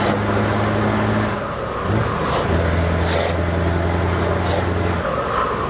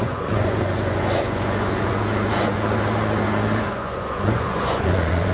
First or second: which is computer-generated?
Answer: second